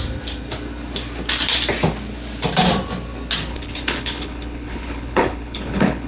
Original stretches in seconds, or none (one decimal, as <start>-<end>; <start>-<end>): 0.0-3.5